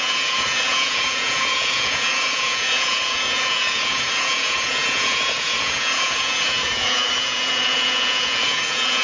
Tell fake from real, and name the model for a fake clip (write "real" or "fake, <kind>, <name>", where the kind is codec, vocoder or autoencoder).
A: fake, vocoder, Vocos